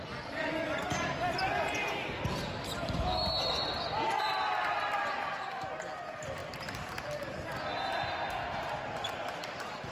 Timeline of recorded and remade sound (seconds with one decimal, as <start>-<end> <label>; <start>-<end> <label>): 0.0-9.9 recorded